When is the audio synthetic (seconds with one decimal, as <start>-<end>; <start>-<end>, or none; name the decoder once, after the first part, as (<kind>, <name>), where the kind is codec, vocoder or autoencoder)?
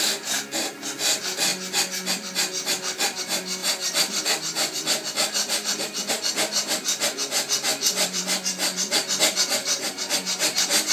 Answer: 3.6-6.1 (vocoder, BigVGAN v2); 7.7-9.2; 9.6-10.1